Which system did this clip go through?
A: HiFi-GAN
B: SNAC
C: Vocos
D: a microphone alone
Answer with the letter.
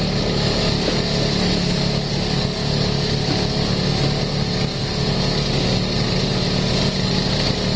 D